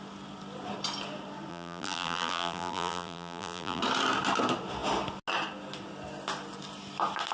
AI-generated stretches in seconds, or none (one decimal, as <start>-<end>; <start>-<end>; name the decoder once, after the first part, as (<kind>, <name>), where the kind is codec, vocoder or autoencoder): 1.5-3.8 (vocoder, BigVGAN v2)